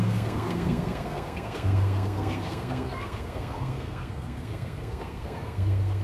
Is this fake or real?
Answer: fake